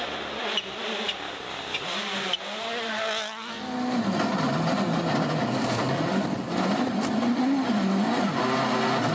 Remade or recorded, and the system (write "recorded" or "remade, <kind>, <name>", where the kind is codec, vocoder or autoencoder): recorded